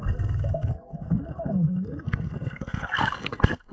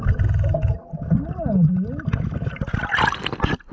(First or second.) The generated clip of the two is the first